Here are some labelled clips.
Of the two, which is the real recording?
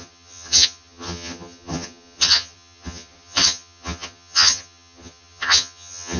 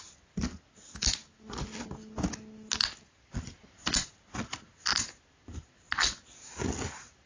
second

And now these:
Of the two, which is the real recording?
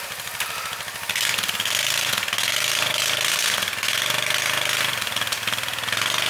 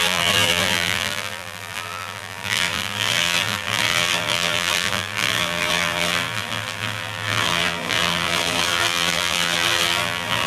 first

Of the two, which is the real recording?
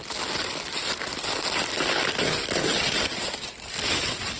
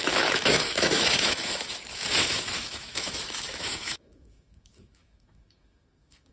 first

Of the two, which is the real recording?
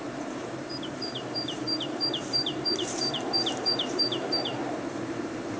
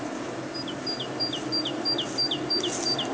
second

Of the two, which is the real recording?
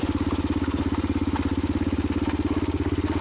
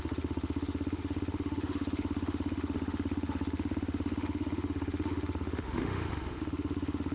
first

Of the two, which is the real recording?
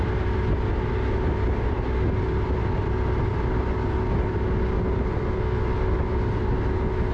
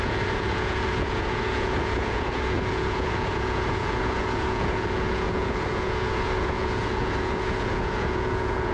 first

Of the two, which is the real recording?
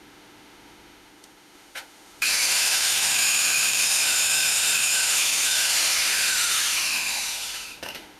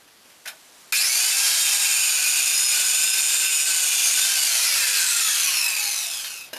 second